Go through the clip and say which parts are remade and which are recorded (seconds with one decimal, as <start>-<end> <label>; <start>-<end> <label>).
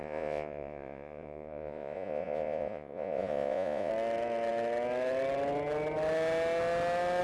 0.0-3.9 remade; 3.9-7.2 recorded